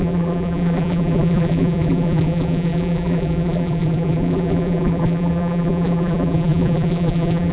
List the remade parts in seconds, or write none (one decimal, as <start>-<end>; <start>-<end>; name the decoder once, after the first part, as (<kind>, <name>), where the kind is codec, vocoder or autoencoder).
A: 0.0-7.5 (vocoder, BigVGAN v2)